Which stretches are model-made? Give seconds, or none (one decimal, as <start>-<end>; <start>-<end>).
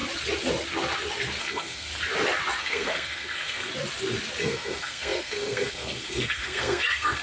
1.4-1.9; 2.6-3.7; 4.4-7.2